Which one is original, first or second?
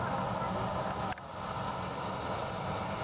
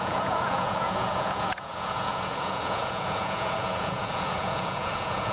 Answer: first